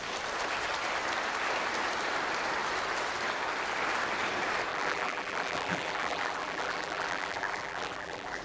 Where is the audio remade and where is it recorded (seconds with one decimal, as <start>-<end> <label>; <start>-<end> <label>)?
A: 0.0-4.7 recorded; 4.7-8.4 remade